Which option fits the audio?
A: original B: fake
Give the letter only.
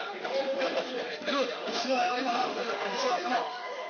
B